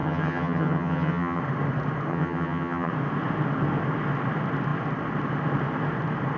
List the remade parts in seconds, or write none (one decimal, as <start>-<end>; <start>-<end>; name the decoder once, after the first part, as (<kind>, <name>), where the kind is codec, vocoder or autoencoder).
0.0-1.4 (vocoder, HiFi-GAN); 2.1-2.9